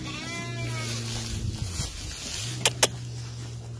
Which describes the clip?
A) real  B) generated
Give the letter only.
A